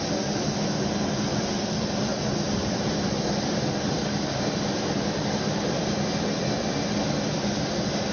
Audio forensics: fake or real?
real